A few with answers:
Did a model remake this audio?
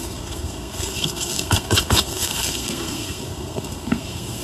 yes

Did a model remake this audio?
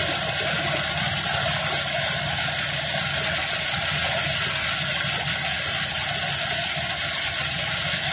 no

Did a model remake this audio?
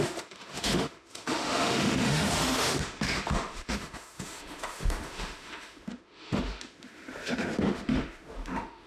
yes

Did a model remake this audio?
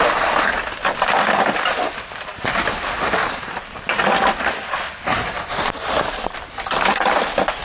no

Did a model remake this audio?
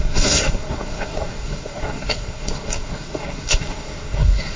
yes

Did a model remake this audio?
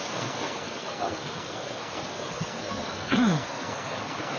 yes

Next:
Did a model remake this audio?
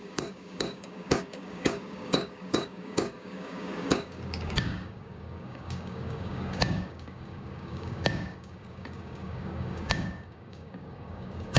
yes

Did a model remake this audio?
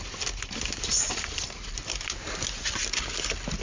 no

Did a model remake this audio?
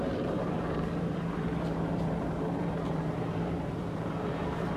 yes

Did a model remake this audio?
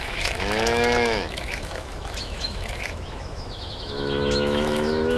yes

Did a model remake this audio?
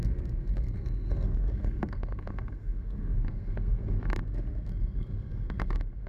yes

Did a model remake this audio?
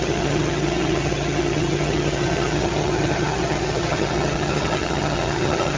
yes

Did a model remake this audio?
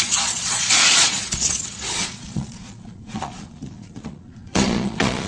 yes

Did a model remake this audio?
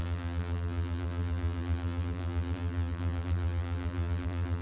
yes